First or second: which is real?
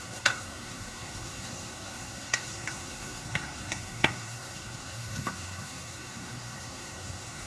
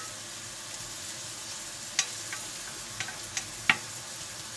second